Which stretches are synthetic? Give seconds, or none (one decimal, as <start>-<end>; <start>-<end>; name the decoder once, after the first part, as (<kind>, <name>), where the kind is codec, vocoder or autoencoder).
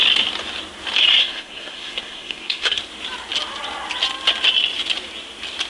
1.2-2.8 (codec, SNAC)